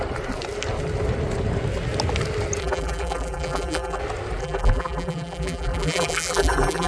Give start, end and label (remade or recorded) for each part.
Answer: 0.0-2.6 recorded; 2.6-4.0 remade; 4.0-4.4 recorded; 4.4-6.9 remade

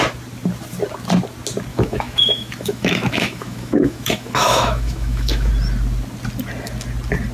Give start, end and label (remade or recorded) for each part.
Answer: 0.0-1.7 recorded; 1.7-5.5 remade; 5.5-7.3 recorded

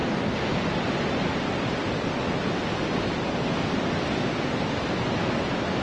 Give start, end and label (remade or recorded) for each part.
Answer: 0.0-5.8 recorded